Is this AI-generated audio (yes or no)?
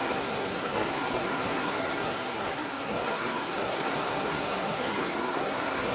yes